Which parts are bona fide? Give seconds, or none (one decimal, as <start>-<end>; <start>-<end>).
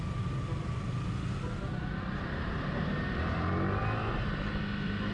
0.0-3.8; 4.6-5.1